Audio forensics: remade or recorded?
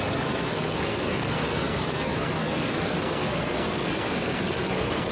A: remade